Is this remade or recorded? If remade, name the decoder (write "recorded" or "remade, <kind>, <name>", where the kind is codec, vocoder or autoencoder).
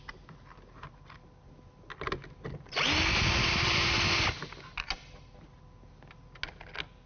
recorded